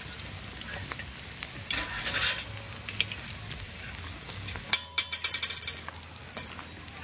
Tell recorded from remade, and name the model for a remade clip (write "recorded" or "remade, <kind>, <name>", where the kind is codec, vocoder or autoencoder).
recorded